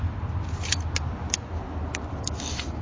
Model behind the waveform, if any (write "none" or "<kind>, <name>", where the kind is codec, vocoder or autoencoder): none